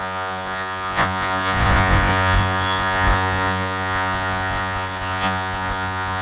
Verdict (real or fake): fake